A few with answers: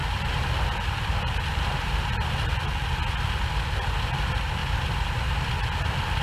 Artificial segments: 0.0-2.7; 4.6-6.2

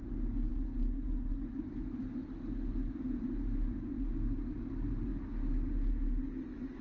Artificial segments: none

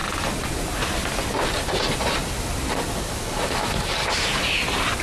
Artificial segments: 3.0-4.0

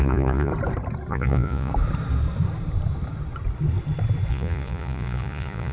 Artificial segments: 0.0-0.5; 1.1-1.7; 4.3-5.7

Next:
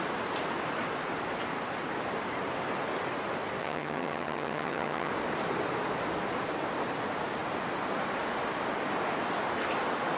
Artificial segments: 3.6-5.1